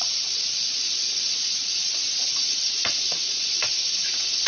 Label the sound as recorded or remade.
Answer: remade